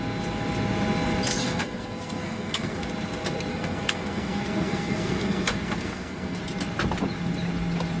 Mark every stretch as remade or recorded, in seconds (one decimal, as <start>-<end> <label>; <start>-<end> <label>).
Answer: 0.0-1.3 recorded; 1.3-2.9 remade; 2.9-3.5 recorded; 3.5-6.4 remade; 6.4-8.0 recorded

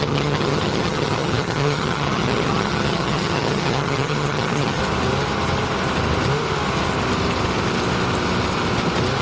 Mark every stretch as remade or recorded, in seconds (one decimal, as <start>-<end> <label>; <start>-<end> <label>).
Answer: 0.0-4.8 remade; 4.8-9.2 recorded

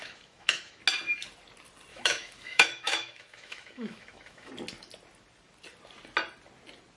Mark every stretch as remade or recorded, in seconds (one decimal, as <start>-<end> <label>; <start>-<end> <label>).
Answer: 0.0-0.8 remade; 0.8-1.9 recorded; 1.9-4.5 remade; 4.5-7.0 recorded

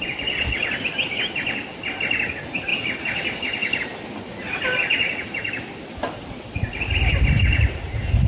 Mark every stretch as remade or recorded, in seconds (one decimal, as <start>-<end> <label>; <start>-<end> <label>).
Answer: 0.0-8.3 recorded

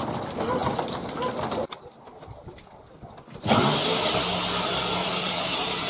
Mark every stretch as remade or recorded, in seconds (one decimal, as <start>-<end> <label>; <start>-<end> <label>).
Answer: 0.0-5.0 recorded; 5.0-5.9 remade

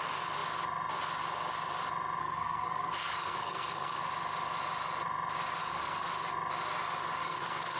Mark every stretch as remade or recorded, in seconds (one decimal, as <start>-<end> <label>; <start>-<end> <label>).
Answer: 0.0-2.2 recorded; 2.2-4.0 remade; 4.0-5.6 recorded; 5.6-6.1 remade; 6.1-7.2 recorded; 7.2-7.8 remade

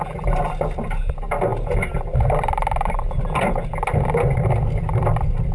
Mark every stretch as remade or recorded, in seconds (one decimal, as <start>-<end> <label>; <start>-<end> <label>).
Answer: 0.0-5.5 recorded